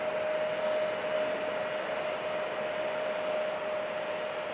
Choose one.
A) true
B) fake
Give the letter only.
A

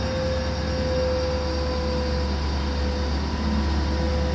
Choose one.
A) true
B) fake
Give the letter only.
A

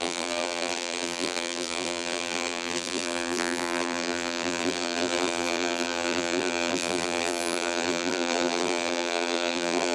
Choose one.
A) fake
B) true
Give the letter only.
A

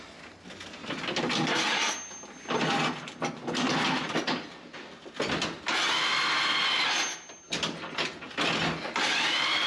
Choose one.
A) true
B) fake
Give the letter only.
A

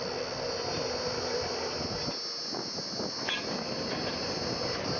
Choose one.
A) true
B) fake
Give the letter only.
A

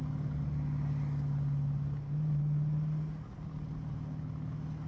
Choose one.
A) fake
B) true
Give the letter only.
B